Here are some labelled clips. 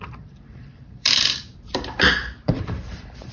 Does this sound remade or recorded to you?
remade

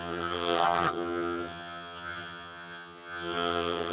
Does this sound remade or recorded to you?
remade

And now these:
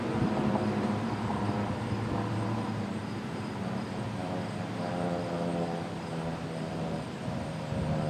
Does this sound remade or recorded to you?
remade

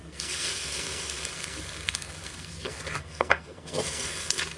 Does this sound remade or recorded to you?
remade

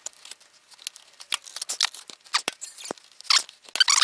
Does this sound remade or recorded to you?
recorded